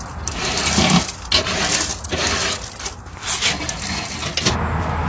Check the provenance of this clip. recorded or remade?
recorded